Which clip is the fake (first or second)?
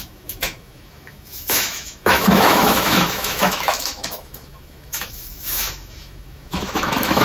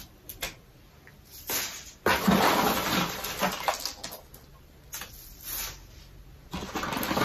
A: first